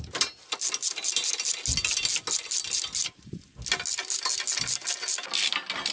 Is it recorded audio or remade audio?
recorded